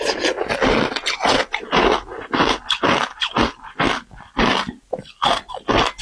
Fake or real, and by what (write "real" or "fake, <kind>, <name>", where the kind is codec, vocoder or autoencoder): real